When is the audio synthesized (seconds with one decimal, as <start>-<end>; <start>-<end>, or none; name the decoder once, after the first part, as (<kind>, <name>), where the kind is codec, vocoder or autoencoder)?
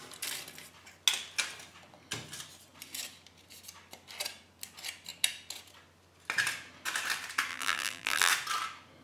7.5-8.3 (vocoder, BigVGAN v2)